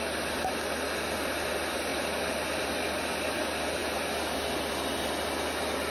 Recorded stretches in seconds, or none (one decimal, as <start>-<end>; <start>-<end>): 0.0-5.9